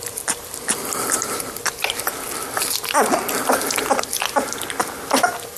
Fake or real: real